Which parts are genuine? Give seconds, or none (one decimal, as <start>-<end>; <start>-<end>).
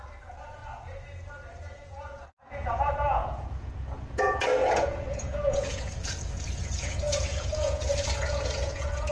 0.6-1.5